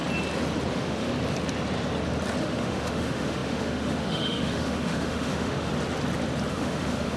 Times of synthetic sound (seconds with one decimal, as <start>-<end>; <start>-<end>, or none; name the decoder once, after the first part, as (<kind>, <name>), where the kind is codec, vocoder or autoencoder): 0.7-1.1 (autoencoder, DAC-VAE); 2.4-5.7; 6.5-7.2